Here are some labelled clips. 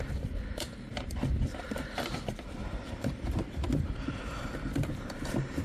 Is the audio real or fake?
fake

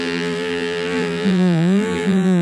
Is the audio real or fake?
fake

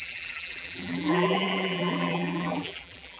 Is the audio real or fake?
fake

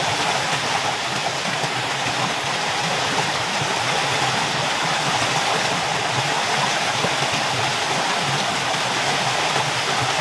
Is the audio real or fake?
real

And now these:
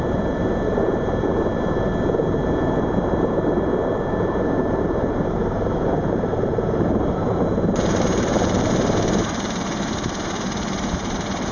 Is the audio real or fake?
fake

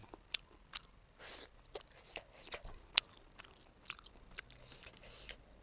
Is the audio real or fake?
real